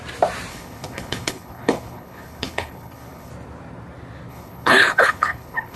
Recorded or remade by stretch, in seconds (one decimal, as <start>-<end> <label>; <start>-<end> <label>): 0.0-0.5 recorded; 0.5-3.3 remade; 3.3-4.3 recorded; 4.3-5.8 remade